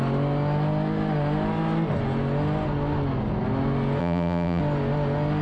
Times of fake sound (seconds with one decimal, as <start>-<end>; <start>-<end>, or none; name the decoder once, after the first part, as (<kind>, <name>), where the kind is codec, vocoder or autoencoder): 4.0-4.6 (vocoder, BigVGAN v2)